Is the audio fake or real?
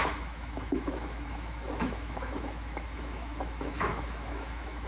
fake